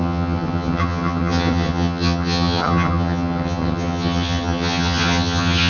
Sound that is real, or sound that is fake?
fake